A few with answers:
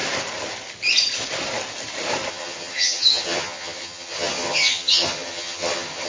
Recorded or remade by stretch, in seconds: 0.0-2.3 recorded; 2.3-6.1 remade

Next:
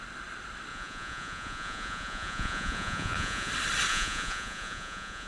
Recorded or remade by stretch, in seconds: 0.0-0.7 recorded; 0.7-3.5 remade; 3.5-3.9 recorded; 3.9-5.3 remade

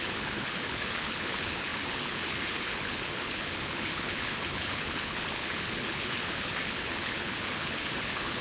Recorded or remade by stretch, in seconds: 0.0-8.4 remade

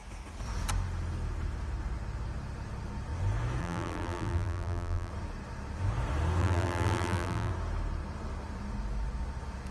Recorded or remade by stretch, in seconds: 0.0-3.6 recorded; 3.6-5.1 remade; 5.1-6.4 recorded; 6.4-7.5 remade; 7.5-9.7 recorded